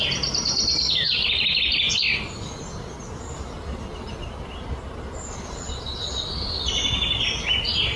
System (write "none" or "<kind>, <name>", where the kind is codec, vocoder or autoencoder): none